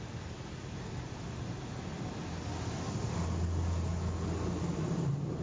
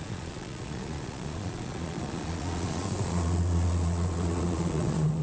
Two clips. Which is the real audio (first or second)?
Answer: first